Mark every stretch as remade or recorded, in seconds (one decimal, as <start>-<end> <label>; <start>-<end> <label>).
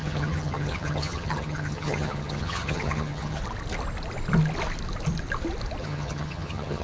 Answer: 0.0-3.4 remade; 3.4-5.8 recorded; 5.8-6.8 remade